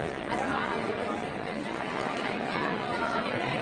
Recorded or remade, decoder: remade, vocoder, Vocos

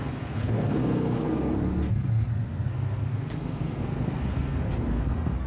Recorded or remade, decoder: remade, codec, SNAC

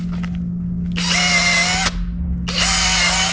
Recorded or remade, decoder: recorded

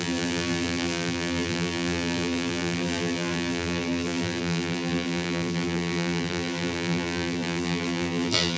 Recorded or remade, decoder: remade, vocoder, BigVGAN v2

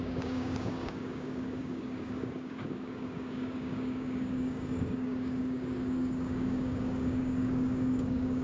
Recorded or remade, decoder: remade, codec, DAC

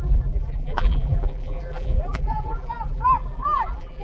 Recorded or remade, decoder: remade, vocoder, BigVGAN v2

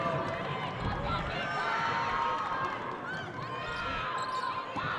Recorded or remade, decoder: recorded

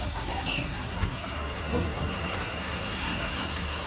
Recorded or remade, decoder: remade, codec, SNAC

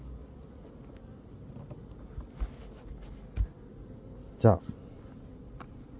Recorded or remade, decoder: recorded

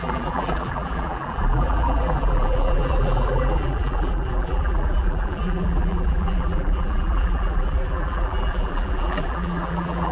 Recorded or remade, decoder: remade, vocoder, BigVGAN v2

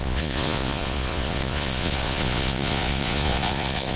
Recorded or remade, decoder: remade, vocoder, Vocos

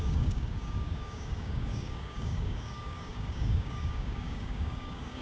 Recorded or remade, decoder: remade, codec, DAC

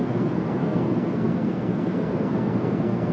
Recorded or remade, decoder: remade, codec, SNAC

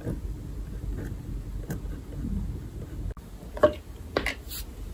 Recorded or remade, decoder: recorded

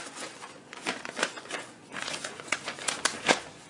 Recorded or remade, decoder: remade, vocoder, Vocos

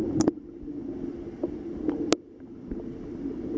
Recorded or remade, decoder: recorded